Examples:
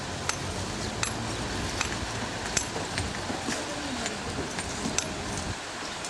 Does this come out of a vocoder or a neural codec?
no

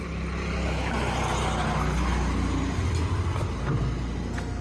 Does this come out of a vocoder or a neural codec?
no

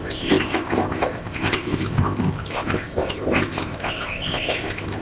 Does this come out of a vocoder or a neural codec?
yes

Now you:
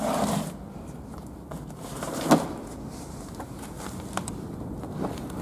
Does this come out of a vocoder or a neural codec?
no